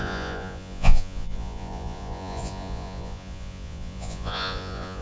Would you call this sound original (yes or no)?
no